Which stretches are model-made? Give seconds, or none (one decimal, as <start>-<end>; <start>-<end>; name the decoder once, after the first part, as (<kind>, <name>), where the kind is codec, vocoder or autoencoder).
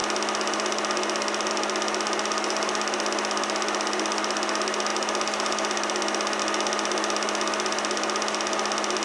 none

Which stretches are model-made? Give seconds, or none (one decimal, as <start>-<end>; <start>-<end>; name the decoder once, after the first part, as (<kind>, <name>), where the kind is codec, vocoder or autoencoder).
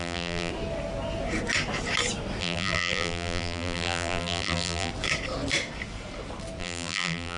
0.0-0.5 (vocoder, BigVGAN v2); 2.4-4.9; 6.6-7.4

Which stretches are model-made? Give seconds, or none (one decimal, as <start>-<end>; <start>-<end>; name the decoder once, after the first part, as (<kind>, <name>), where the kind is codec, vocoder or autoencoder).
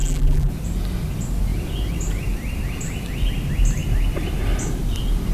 0.0-0.5 (vocoder, BigVGAN v2)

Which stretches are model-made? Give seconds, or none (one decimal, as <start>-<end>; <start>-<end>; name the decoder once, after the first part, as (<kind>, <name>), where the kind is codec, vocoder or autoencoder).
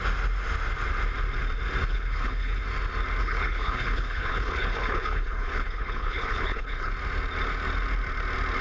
1.9-2.6 (codec, HILCodec); 3.2-6.9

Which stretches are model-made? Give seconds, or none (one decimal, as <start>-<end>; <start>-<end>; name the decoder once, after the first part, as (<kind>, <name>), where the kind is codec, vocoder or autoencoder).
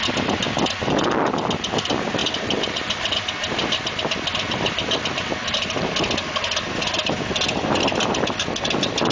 2.2-3.3 (vocoder, BigVGAN v2)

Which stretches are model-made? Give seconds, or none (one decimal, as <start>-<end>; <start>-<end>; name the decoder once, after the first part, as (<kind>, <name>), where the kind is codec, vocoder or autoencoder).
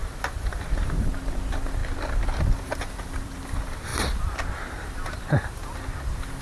1.0-1.8 (vocoder, BigVGAN v2); 2.4-6.4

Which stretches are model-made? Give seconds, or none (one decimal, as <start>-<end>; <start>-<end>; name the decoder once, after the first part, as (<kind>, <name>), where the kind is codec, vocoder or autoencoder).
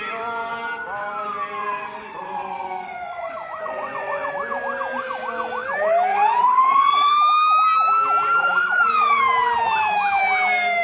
1.6-4.3 (vocoder, Vocos); 6.1-7.1; 8.4-9.2